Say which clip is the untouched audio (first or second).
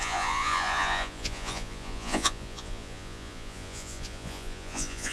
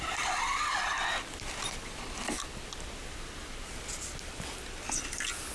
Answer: second